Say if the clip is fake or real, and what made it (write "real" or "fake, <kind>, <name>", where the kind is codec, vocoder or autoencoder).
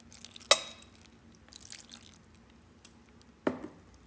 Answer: real